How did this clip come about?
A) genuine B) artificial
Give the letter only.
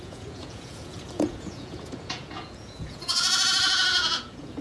B